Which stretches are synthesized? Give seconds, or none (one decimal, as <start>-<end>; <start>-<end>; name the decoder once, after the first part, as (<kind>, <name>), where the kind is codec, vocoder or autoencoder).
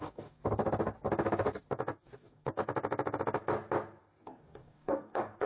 0.0-0.4 (codec, DAC); 2.0-2.6; 4.2-5.5